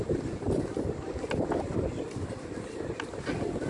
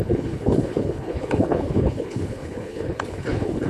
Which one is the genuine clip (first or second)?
first